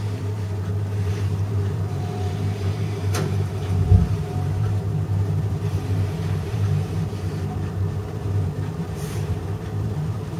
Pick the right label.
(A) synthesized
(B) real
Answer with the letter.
A